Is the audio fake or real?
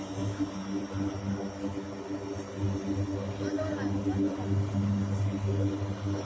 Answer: real